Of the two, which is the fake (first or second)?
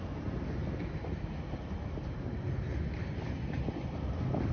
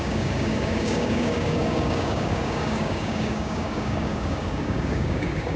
second